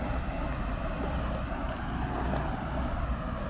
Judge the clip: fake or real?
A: real